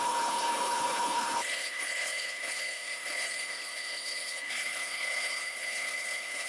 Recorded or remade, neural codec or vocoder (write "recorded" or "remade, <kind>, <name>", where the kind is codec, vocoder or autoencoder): remade, codec, HILCodec